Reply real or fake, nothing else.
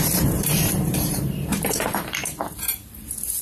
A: fake